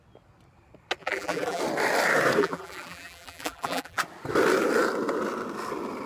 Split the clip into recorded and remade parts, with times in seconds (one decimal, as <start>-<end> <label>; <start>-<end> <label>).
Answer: 0.0-1.0 recorded; 1.0-1.6 remade; 1.6-2.4 recorded; 2.4-4.0 remade; 4.0-6.1 recorded